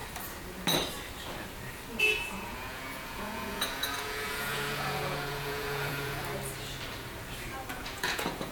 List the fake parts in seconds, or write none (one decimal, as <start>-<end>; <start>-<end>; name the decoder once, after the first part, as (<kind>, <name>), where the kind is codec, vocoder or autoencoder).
2.0-6.2 (vocoder, Vocos); 7.7-8.5